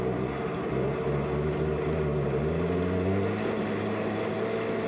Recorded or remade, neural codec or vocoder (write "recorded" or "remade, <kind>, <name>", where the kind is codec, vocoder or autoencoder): recorded